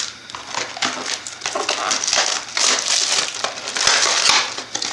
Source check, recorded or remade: recorded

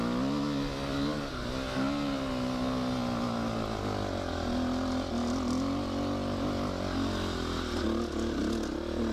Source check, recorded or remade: recorded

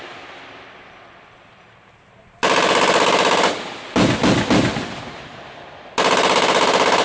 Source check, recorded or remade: recorded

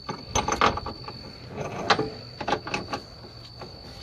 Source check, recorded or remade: recorded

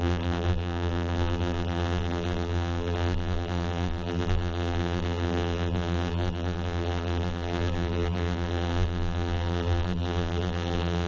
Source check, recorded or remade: remade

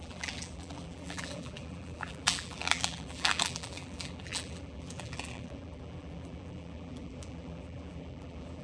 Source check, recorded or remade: remade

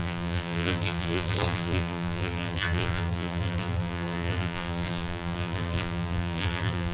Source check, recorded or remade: remade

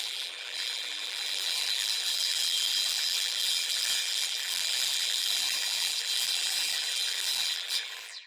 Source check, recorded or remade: remade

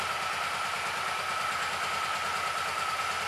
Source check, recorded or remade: recorded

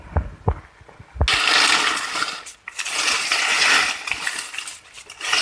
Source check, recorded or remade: recorded